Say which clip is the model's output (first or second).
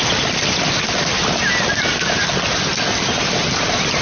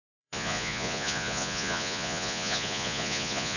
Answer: second